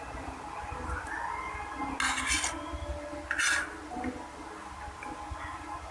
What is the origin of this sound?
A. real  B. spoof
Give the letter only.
A